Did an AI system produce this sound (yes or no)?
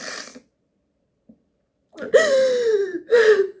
yes